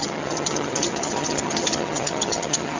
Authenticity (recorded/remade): remade